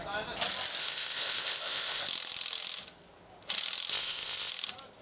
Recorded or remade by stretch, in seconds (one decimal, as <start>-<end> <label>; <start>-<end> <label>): 0.0-0.8 recorded; 0.8-2.0 remade; 2.0-3.9 recorded; 3.9-4.5 remade; 4.5-5.0 recorded